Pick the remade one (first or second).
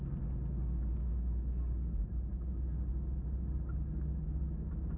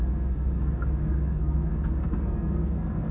second